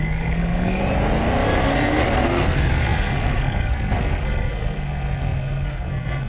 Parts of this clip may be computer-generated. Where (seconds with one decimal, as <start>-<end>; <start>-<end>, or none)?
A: 0.0-0.8; 1.6-6.3